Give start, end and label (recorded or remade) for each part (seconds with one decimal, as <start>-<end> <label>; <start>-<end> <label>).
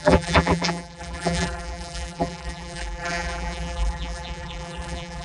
0.0-5.2 remade